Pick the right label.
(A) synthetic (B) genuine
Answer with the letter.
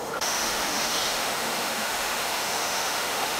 A